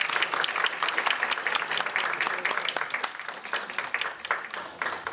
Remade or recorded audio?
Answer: recorded